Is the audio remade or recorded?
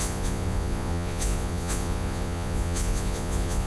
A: remade